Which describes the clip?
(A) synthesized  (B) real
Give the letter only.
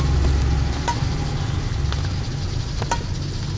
B